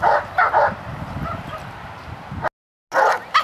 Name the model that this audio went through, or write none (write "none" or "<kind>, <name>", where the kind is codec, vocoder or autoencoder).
none